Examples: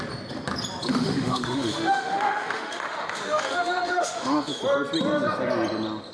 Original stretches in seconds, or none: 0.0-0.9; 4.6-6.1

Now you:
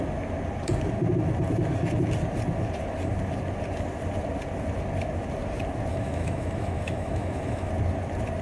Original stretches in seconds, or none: 0.0-5.9; 7.7-8.4

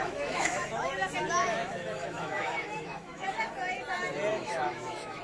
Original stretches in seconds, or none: 0.9-1.4; 3.5-4.3

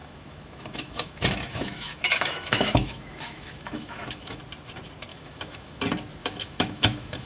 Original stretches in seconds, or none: 4.4-5.1; 5.8-6.2

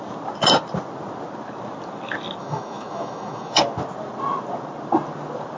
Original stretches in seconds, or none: 0.0-2.4; 3.6-5.6

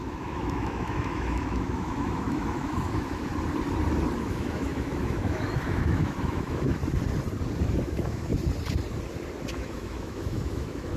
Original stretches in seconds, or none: 3.3-4.2; 6.8-7.8; 8.3-9.5

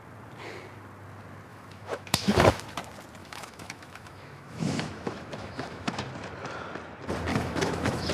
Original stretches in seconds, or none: 0.0-1.5; 2.6-3.2; 6.0-7.3